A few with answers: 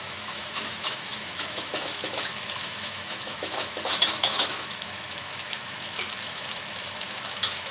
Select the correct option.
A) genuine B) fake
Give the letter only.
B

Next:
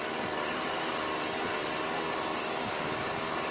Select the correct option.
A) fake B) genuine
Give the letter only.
B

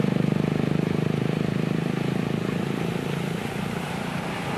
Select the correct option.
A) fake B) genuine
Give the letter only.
B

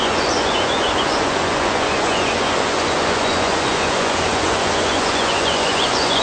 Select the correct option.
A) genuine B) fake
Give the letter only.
B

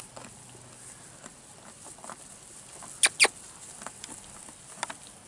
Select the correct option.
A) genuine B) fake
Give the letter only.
A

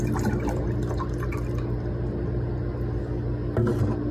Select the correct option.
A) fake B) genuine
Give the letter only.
B